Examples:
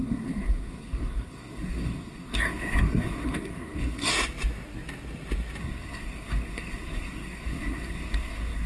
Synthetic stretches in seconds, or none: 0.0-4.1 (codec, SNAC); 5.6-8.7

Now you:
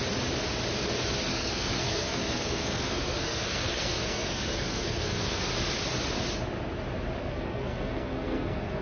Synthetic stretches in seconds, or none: 1.3-5.5 (codec, SNAC); 7.2-8.8

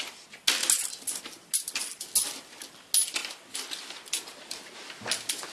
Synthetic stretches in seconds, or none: none